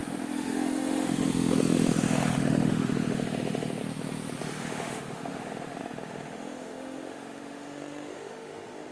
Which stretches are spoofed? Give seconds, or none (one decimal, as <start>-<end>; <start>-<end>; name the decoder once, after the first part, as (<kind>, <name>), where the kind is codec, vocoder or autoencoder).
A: 0.0-3.8 (autoencoder, DAC-VAE); 4.4-8.9